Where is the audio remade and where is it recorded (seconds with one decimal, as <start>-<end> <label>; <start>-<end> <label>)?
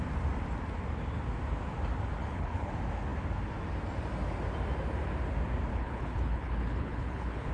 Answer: 0.0-2.2 recorded; 2.2-2.7 remade; 2.7-5.7 recorded; 5.7-7.5 remade